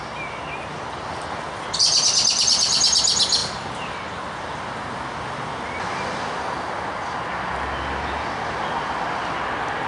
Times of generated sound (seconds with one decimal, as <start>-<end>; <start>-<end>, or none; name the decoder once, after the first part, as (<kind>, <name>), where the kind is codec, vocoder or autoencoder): 0.7-2.0 (vocoder, BigVGAN v2)